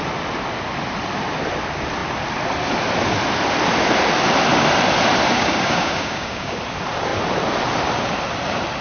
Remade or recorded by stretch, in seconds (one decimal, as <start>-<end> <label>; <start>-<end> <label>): 0.0-5.3 recorded; 5.3-6.6 remade; 6.6-8.8 recorded